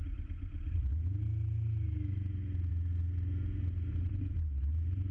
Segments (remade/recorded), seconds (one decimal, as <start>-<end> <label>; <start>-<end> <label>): 0.0-5.1 recorded